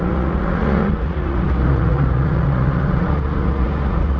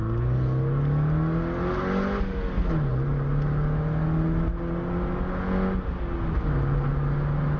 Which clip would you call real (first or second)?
second